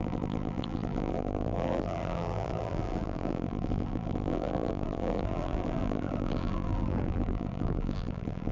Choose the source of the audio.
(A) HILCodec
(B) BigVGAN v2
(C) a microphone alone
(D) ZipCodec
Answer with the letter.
B